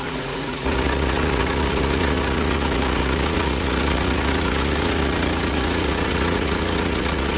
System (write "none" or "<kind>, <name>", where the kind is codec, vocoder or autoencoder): vocoder, Vocos